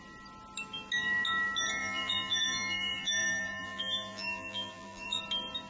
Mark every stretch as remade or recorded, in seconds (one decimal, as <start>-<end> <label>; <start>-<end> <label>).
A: 0.0-1.8 recorded; 1.8-5.2 remade; 5.2-5.7 recorded